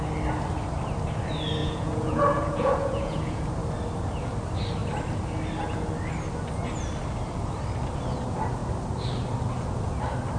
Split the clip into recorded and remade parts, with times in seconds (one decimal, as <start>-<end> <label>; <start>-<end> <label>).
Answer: 0.0-1.6 recorded; 1.6-3.4 remade; 3.4-10.4 recorded